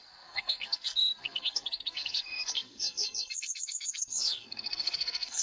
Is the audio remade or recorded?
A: remade